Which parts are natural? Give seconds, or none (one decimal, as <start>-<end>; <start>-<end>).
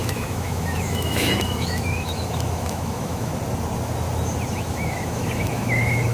3.3-4.5